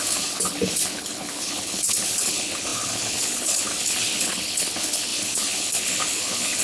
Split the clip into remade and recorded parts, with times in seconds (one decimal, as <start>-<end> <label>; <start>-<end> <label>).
0.0-6.6 remade

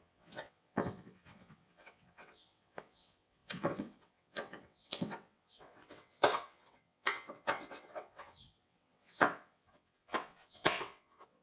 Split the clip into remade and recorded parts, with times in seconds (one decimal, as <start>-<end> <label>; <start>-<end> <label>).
0.0-11.4 remade